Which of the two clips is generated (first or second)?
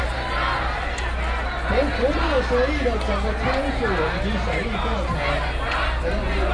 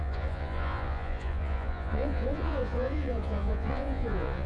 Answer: second